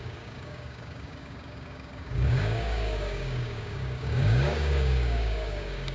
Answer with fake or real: fake